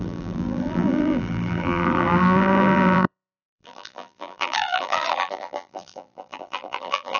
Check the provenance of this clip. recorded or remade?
remade